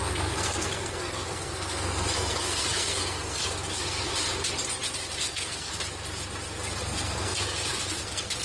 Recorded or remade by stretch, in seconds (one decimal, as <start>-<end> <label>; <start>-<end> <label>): 0.0-4.1 remade; 4.1-5.2 recorded; 5.2-5.7 remade; 5.7-6.8 recorded; 6.8-8.4 remade